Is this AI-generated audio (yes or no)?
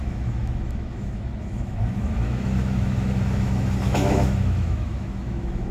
yes